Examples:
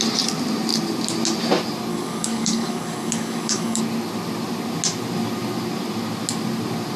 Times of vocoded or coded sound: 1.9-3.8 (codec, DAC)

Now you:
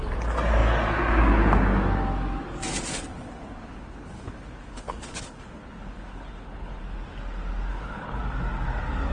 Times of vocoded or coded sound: 3.1-6.8 (codec, HILCodec); 7.7-8.2

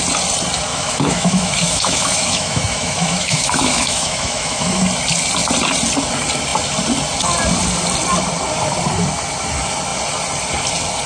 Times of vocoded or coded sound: 0.7-4.8 (autoencoder, DAC-VAE)

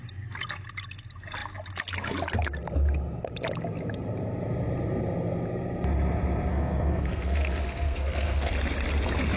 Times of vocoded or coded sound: 6.5-8.5 (codec, SNAC)

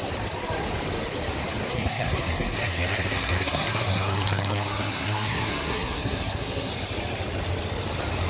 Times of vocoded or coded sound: 1.7-6.7 (codec, SNAC)

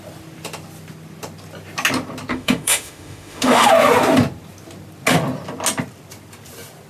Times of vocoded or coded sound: 2.3-3.7 (autoencoder, DAC-VAE)

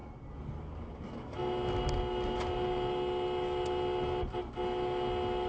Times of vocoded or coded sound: none

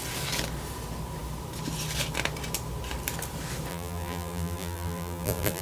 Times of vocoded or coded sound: 3.7-5.6 (vocoder, BigVGAN v2)